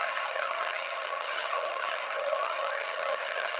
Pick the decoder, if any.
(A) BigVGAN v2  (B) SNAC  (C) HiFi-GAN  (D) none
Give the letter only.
C